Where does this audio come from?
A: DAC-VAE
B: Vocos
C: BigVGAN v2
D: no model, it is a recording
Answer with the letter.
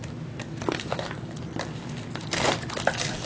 D